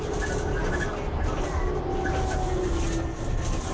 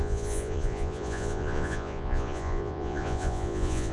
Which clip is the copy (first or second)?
second